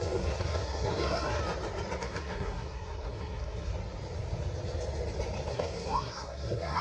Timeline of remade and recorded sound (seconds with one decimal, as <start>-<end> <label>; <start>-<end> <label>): 0.0-1.4 remade; 1.4-2.0 recorded; 2.0-3.7 remade; 3.7-5.5 recorded; 5.5-6.8 remade